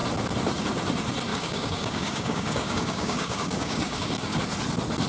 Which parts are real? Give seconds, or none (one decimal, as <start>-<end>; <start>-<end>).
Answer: 0.0-1.3; 4.4-5.1